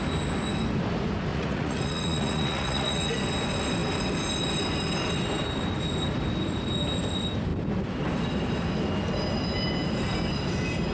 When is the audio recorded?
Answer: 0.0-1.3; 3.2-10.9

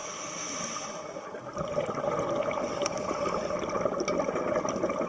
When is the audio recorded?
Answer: 0.0-5.1